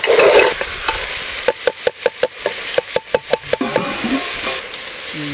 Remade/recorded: recorded